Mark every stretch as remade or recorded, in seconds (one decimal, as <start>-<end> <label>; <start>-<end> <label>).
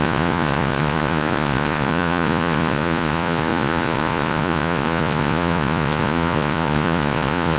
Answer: 0.0-7.6 remade